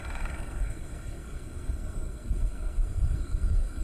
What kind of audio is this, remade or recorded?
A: remade